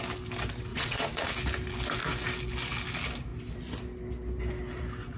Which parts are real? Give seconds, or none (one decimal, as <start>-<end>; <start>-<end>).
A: 0.0-0.7; 1.3-5.2